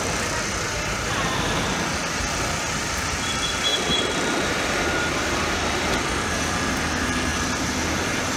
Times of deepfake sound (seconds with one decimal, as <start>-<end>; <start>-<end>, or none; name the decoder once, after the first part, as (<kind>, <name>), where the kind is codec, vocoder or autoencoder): none